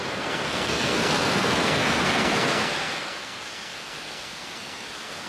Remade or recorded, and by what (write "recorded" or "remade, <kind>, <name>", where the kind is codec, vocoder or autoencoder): remade, codec, SNAC